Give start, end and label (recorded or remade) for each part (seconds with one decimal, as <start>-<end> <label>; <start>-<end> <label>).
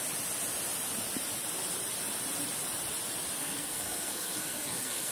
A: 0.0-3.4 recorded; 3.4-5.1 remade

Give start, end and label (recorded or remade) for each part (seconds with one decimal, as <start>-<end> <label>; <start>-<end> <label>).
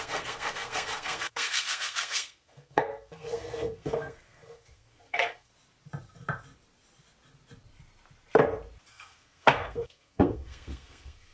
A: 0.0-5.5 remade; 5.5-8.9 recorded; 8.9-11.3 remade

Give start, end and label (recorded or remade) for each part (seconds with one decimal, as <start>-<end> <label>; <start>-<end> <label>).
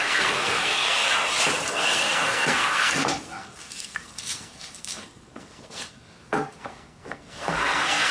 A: 0.0-1.0 remade; 1.0-1.7 recorded; 1.7-8.1 remade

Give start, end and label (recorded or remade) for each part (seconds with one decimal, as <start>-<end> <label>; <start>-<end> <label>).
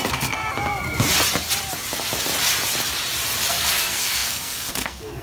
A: 0.0-0.4 remade; 0.4-3.5 recorded; 3.5-5.2 remade